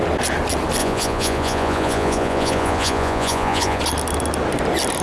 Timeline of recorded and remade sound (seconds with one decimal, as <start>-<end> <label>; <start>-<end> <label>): 0.0-0.8 recorded; 0.8-3.8 remade; 3.8-5.0 recorded